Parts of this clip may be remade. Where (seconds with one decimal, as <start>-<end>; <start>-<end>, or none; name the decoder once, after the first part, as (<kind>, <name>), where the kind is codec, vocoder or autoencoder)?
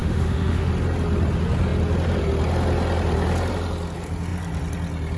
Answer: 0.0-0.7 (autoencoder, DAC-VAE)